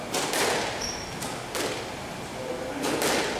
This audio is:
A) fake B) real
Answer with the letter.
B